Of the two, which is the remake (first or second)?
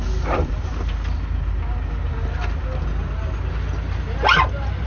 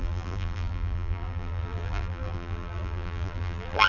second